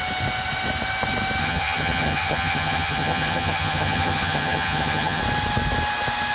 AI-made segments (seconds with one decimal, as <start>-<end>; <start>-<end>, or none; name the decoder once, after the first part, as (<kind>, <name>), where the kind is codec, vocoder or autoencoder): 1.4-5.2 (vocoder, HiFi-GAN)